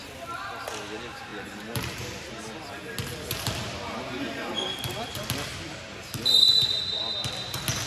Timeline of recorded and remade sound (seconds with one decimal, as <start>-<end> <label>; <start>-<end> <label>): 0.0-5.9 recorded; 5.9-6.6 remade; 6.6-7.9 recorded